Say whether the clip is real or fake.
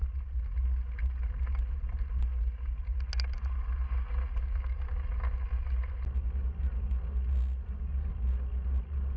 real